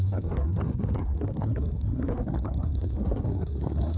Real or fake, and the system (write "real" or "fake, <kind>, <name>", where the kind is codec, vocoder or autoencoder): fake, codec, SNAC